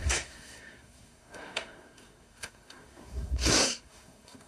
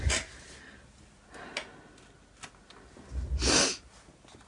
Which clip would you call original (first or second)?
second